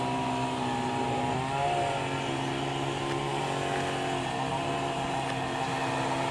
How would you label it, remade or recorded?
recorded